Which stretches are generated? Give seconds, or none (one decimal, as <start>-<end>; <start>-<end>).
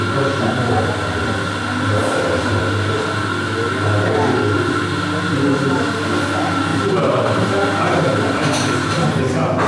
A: 2.0-2.6; 6.7-9.2